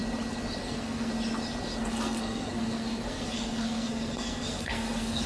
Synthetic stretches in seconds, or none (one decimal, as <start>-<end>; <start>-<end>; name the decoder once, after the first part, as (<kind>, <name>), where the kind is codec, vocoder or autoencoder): 0.6-1.1 (codec, SNAC); 1.8-5.3

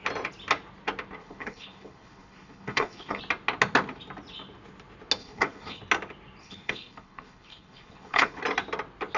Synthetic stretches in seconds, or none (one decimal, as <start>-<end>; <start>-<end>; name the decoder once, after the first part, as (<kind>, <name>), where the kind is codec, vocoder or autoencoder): 1.2-3.2 (codec, HILCodec); 5.2-5.8; 6.4-8.4

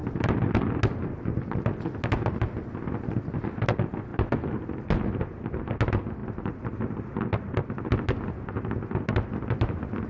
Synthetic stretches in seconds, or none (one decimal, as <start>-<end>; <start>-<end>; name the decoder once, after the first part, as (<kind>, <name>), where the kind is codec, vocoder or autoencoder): 0.0-0.8 (vocoder, BigVGAN v2); 4.1-4.6; 6.2-7.0